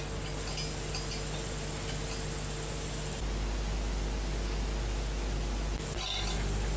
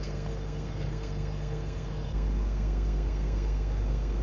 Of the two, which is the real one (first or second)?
first